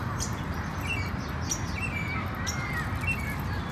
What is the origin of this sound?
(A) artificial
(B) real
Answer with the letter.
B